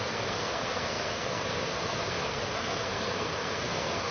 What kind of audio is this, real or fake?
fake